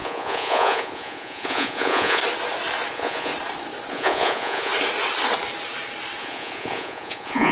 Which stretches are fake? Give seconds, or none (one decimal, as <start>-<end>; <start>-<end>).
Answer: 0.0-2.2; 2.9-3.3; 3.9-4.7; 6.2-7.5